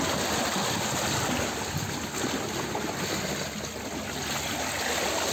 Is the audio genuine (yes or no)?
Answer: yes